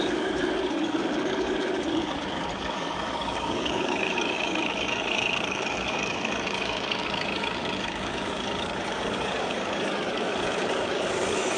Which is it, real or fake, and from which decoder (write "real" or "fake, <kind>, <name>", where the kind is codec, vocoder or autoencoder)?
fake, codec, DAC